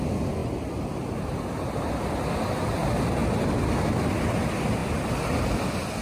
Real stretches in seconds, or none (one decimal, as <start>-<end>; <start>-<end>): 0.0-6.0